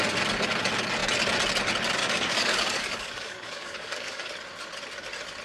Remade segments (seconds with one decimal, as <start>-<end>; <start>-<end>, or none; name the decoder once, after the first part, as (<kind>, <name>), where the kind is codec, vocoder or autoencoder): 2.0-4.3 (codec, DAC)